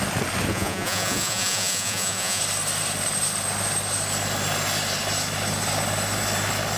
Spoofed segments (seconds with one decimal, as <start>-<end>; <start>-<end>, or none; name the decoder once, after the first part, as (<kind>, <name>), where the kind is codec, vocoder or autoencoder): 0.5-2.4 (vocoder, Vocos)